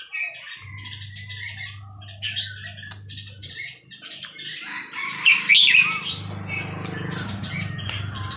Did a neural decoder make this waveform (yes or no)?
no